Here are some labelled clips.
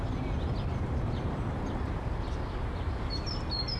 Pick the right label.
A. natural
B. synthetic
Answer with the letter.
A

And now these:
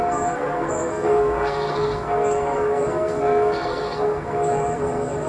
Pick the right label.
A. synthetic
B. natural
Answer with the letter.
A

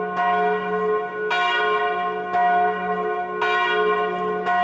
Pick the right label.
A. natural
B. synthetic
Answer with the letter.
A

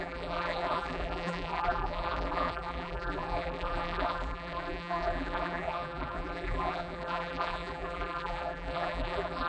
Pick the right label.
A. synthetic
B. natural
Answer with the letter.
A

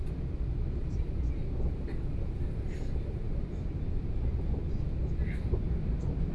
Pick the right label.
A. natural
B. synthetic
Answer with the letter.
A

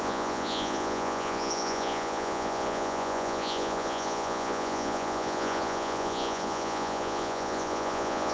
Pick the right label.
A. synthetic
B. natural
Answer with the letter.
A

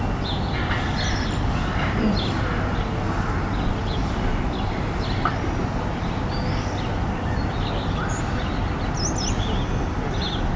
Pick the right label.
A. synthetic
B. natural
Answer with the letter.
B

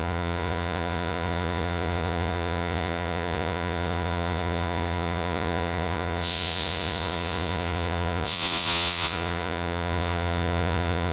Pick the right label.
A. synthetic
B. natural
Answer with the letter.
A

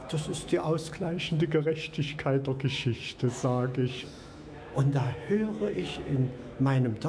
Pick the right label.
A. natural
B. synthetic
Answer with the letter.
B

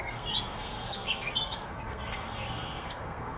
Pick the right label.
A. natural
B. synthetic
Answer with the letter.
B